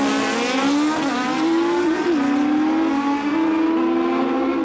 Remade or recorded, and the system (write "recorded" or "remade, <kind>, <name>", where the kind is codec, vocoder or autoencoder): recorded